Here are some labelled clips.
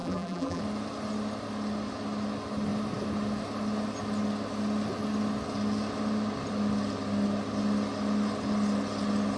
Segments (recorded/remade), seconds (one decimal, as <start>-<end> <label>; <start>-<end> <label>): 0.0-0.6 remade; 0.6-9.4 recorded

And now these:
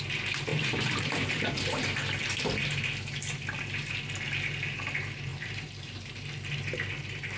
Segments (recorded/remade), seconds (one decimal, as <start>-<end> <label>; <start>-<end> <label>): 0.0-0.5 recorded; 0.5-1.8 remade; 1.8-5.3 recorded; 5.3-6.1 remade; 6.1-7.4 recorded

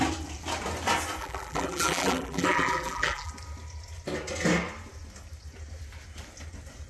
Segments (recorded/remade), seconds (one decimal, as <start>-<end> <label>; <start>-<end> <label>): 0.0-1.2 recorded; 1.2-3.3 remade; 3.3-6.9 recorded

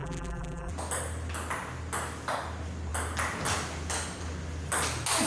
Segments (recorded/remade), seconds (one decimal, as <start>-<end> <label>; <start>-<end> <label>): 0.0-0.7 remade; 0.7-5.3 recorded

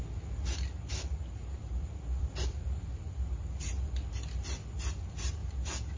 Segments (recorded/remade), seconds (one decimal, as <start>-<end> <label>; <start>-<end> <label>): 0.0-1.6 recorded; 1.6-3.9 remade; 3.9-5.4 recorded; 5.4-6.0 remade